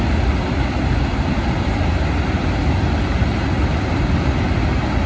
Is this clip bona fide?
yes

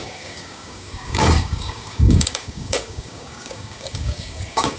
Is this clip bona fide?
no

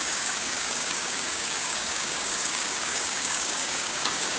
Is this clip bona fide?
no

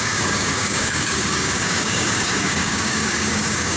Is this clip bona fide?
no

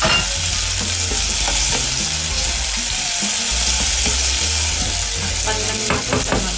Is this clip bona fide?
yes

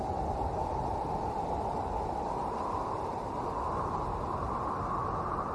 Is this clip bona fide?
yes